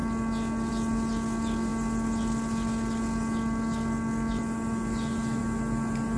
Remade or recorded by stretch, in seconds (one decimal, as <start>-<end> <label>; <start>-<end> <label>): 0.0-6.2 recorded